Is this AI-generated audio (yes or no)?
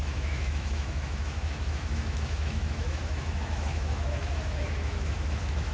yes